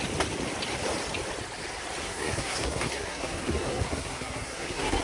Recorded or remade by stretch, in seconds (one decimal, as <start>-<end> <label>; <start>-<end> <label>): 0.0-2.0 recorded; 2.0-5.0 remade